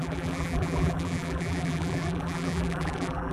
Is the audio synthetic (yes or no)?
yes